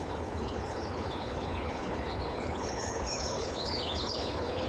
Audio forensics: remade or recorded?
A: remade